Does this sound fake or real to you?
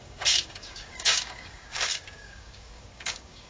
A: fake